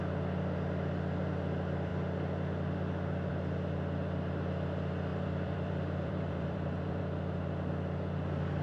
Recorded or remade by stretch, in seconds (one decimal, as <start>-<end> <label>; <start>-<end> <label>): 0.0-5.1 recorded; 5.1-7.0 remade; 7.0-8.6 recorded